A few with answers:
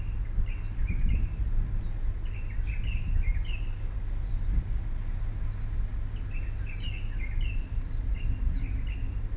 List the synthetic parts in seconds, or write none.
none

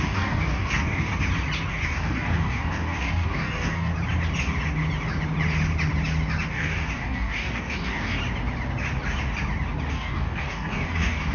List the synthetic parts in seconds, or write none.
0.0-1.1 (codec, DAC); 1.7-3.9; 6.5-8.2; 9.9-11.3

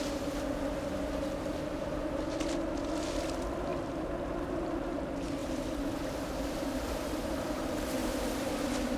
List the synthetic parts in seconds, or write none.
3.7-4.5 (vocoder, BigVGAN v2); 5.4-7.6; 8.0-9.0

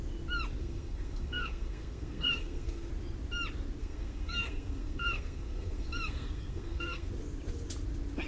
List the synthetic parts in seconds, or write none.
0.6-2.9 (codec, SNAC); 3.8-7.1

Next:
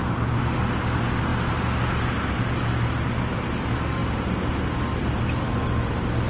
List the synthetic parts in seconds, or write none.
none

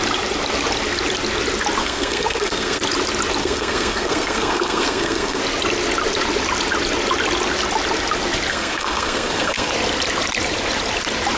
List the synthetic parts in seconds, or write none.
1.8-2.8 (codec, SNAC); 3.4-5.4; 8.5-9.7